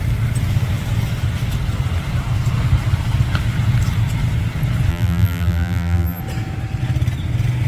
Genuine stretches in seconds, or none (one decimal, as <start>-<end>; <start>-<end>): 0.0-4.9; 6.2-7.7